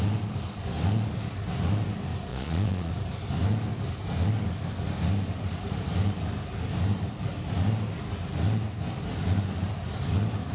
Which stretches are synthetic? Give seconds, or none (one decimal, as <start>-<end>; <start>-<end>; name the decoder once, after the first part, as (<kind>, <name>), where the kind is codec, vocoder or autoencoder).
2.3-2.9 (vocoder, Vocos)

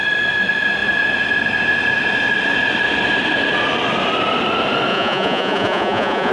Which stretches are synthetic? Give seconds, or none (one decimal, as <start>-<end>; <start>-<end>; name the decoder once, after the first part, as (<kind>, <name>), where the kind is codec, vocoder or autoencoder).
4.9-6.3 (vocoder, Vocos)

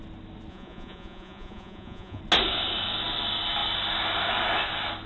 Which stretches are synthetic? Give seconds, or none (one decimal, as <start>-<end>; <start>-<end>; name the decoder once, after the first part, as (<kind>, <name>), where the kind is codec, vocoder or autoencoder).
0.5-2.2 (vocoder, Vocos)

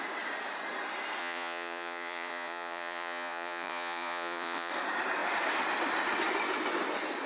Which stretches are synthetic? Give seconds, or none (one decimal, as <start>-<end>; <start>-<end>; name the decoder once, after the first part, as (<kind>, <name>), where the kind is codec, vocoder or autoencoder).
1.2-4.7 (vocoder, Vocos)